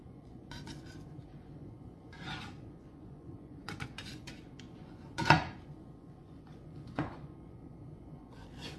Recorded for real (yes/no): no